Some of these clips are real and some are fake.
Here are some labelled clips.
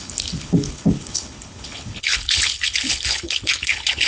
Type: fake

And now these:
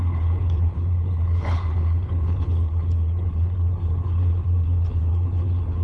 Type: fake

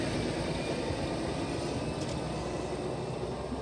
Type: real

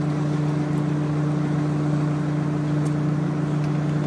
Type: real